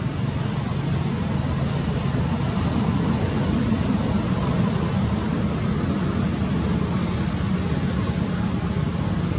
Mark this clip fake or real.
real